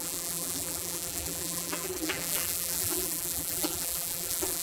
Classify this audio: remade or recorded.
remade